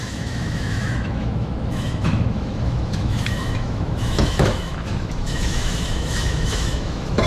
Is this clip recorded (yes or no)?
no